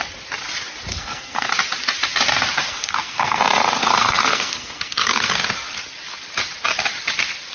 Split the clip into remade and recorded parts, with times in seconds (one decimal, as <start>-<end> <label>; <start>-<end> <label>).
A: 0.0-0.9 recorded; 0.9-1.5 remade; 1.5-2.7 recorded; 2.7-3.4 remade; 3.4-3.8 recorded; 3.8-5.4 remade; 5.4-7.5 recorded